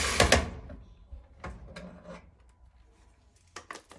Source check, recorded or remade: recorded